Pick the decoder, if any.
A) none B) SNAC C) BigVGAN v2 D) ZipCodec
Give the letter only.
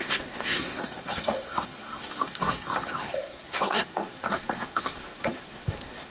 B